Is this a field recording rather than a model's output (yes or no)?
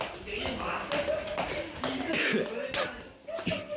yes